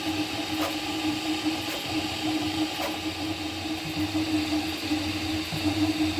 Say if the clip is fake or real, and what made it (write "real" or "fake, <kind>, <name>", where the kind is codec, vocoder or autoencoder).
real